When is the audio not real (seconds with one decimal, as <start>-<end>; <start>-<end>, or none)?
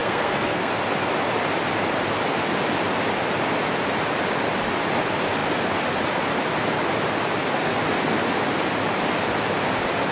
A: 0.0-0.7